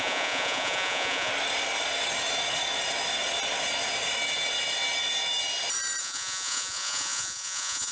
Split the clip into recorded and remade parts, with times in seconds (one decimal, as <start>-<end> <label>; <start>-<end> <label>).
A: 0.0-1.3 remade; 1.3-6.0 recorded; 6.0-7.9 remade